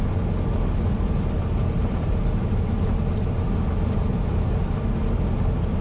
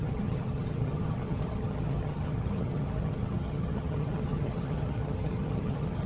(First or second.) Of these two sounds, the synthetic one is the second